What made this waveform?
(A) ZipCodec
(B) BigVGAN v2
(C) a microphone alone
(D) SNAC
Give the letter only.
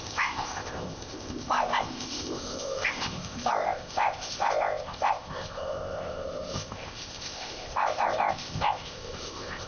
A